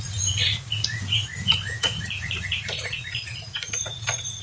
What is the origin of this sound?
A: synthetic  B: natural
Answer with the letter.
A